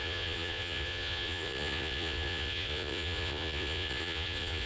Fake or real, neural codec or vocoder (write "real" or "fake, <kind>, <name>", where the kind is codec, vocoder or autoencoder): fake, vocoder, Vocos